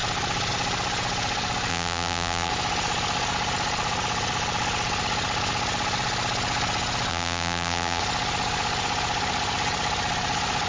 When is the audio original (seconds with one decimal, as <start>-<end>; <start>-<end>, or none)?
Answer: 0.0-1.7; 2.5-7.1; 8.0-10.7